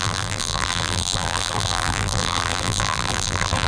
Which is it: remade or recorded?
remade